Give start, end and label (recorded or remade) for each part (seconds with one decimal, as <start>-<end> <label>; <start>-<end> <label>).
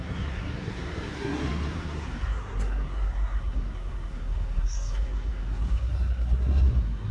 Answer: 0.0-7.1 remade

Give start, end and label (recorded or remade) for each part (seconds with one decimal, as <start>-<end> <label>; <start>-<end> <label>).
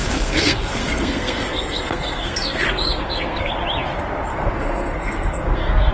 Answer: 0.0-3.5 remade; 3.5-4.3 recorded; 4.3-5.9 remade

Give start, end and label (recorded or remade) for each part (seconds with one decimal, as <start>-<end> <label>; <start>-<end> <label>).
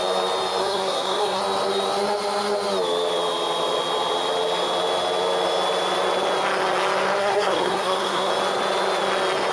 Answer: 0.0-0.6 recorded; 0.6-1.4 remade; 1.4-7.2 recorded; 7.2-8.3 remade; 8.3-9.5 recorded